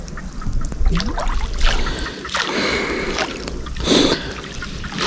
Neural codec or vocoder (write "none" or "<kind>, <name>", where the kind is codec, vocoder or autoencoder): none